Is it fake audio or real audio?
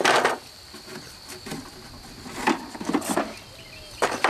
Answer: real